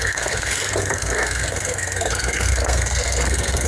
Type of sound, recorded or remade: remade